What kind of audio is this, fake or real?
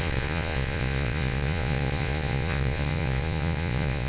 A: fake